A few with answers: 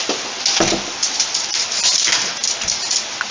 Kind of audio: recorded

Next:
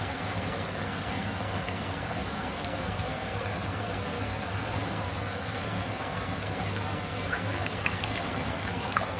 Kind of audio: remade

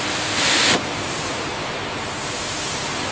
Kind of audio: remade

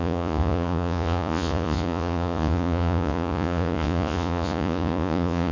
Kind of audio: remade